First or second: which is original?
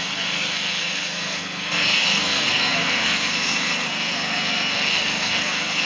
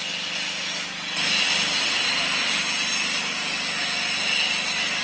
second